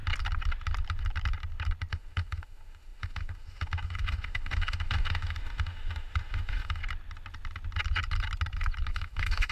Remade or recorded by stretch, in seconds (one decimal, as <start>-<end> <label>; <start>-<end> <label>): 0.0-1.9 recorded; 1.9-6.8 remade; 6.8-8.9 recorded; 8.9-9.5 remade